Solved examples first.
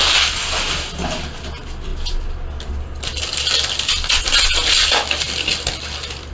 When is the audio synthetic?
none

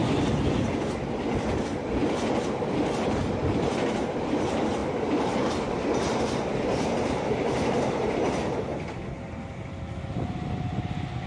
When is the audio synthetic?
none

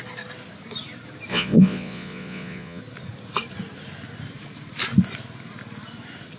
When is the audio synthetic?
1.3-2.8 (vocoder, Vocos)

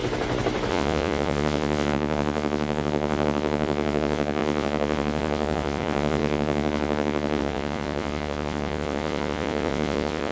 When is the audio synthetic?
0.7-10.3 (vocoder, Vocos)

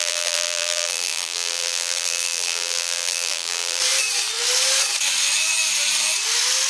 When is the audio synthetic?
0.0-3.8 (vocoder, BigVGAN v2)

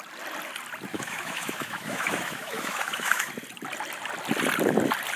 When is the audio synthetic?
0.9-3.3 (autoencoder, DAC-VAE)